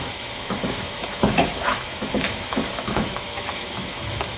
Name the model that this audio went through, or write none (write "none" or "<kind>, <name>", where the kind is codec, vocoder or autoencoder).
autoencoder, DAC-VAE